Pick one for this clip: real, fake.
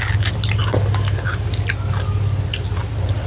real